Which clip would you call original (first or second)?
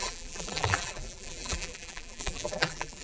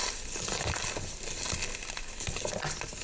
second